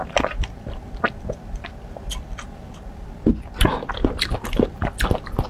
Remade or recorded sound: recorded